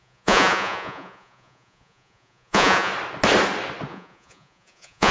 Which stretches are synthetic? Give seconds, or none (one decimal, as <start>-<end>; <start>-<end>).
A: 0.0-2.9; 3.9-5.1